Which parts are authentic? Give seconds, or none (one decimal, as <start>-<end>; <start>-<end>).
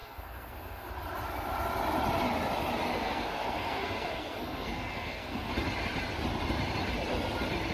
0.9-2.9; 5.5-7.7